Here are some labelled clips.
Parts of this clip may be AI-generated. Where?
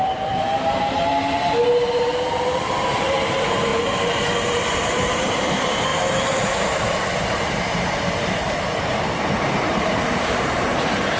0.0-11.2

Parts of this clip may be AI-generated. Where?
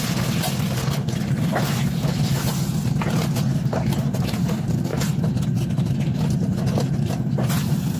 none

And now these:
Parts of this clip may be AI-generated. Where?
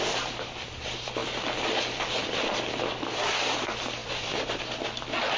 4.0-4.6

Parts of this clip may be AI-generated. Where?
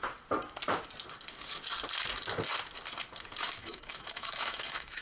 3.6-5.0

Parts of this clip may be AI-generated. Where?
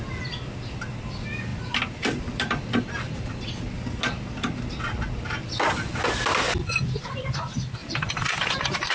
1.5-2.8; 7.8-8.9